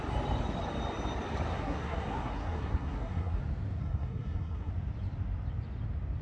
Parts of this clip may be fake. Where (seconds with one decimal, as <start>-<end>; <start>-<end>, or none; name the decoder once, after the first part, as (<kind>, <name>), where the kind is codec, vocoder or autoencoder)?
1.5-3.4 (codec, SNAC); 3.8-4.7